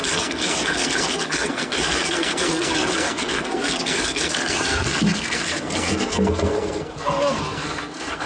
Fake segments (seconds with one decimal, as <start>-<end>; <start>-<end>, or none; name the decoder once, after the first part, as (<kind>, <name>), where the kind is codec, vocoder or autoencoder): 0.0-8.3 (codec, SNAC)